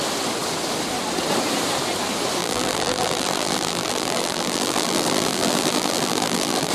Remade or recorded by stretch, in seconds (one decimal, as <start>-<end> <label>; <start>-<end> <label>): 0.0-2.4 recorded; 2.4-6.7 remade